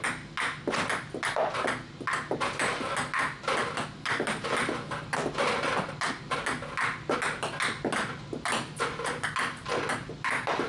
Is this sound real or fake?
real